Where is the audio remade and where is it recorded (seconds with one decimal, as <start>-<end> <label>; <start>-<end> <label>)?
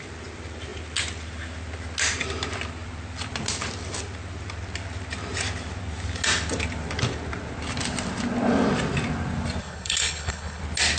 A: 0.0-9.6 recorded; 9.6-10.6 remade; 10.6-11.0 recorded